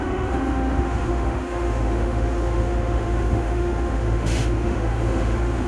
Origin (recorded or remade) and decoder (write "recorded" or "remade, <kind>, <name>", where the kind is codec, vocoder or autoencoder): remade, autoencoder, DAC-VAE